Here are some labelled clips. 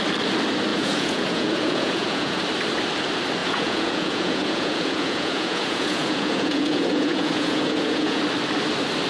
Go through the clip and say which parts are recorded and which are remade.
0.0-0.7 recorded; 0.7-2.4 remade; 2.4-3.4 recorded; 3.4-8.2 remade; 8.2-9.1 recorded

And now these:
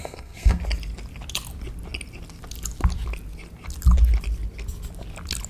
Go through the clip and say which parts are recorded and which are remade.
0.0-0.6 remade; 0.6-5.5 recorded

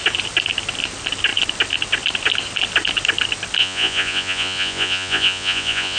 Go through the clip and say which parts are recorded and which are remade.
0.0-3.6 recorded; 3.6-6.0 remade

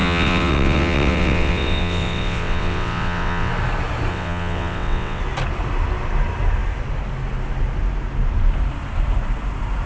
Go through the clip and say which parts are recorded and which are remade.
0.0-3.5 remade; 3.5-4.1 recorded; 4.1-5.2 remade; 5.2-9.9 recorded

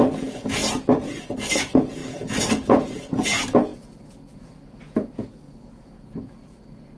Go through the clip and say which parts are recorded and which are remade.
0.0-0.6 remade; 0.6-1.6 recorded; 1.6-2.0 remade; 2.0-2.5 recorded; 2.5-7.0 remade

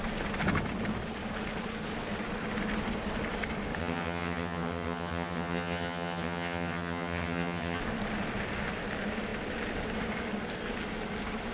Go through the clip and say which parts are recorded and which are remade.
0.0-3.8 recorded; 3.8-7.8 remade; 7.8-11.5 recorded

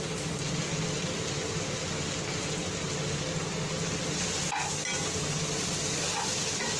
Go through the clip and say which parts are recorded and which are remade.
0.0-6.8 recorded

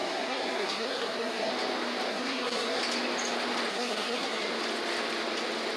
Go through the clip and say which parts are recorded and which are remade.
0.0-1.5 remade; 1.5-2.1 recorded; 2.1-2.8 remade; 2.8-3.7 recorded; 3.7-4.5 remade; 4.5-5.8 recorded